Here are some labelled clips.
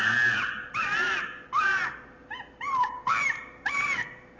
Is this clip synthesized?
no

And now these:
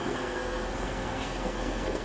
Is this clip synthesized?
yes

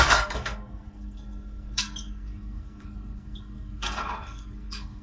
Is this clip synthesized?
yes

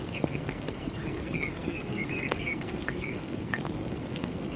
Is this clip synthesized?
yes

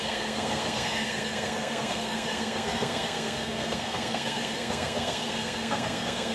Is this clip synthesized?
yes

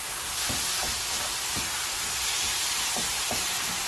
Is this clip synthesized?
no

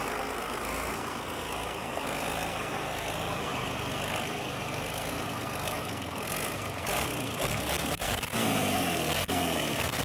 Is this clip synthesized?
yes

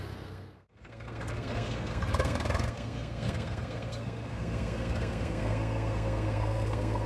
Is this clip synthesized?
yes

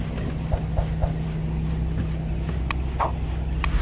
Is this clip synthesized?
no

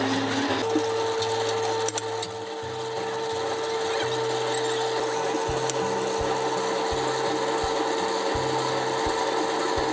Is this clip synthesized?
no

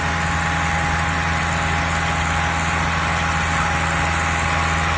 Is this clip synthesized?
no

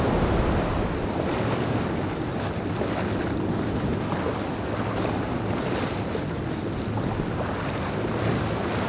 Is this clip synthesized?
no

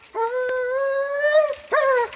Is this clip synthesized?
no